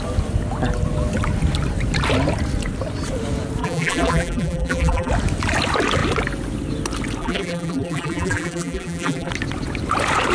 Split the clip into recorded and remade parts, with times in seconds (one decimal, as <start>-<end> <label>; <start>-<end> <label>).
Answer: 0.0-3.6 recorded; 3.6-5.1 remade; 5.1-7.2 recorded; 7.2-9.3 remade; 9.3-10.3 recorded